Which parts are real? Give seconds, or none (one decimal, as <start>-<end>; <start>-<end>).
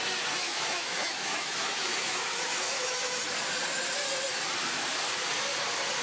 0.0-0.4; 3.2-6.0